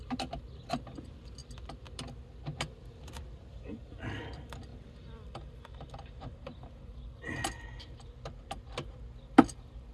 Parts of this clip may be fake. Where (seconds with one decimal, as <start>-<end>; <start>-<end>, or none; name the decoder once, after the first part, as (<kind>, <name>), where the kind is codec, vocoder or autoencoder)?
none